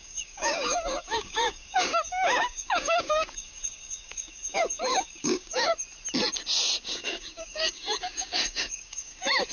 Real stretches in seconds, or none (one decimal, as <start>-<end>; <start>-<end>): 5.7-6.8